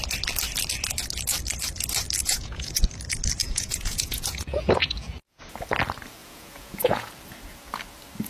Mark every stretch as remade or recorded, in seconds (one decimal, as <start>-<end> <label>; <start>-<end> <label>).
0.0-2.2 recorded; 2.2-2.8 remade; 2.8-3.4 recorded; 3.4-5.4 remade; 5.4-6.2 recorded; 6.2-7.1 remade; 7.1-8.3 recorded